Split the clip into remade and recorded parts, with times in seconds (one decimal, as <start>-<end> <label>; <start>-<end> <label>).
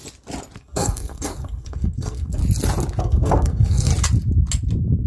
0.0-0.6 recorded; 0.6-2.4 remade; 2.4-3.0 recorded; 3.0-3.9 remade; 3.9-5.1 recorded